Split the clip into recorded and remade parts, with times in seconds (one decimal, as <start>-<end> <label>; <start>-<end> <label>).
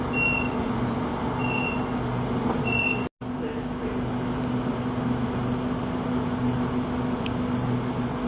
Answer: 0.0-8.3 recorded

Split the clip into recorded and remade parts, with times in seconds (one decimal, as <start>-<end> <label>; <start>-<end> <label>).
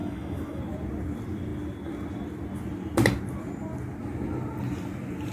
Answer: 0.0-0.6 remade; 0.6-5.3 recorded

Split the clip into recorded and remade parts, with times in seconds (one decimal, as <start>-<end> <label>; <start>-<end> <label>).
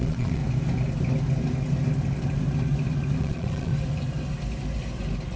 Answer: 0.0-0.4 remade; 0.4-3.2 recorded; 3.2-3.7 remade; 3.7-5.4 recorded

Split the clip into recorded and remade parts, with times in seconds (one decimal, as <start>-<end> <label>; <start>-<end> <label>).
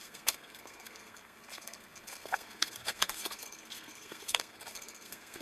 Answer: 0.0-5.4 remade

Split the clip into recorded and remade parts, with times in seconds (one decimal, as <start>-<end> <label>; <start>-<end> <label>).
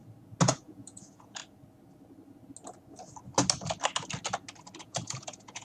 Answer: 0.0-0.5 recorded; 0.5-1.4 remade; 1.4-4.8 recorded; 4.8-5.6 remade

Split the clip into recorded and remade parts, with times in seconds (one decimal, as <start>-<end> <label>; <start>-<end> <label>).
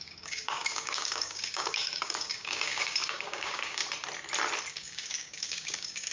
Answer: 0.0-3.8 remade; 3.8-4.7 recorded; 4.7-6.1 remade